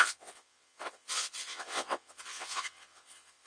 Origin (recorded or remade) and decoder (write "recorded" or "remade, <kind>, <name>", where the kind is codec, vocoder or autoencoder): remade, vocoder, WaveNeXt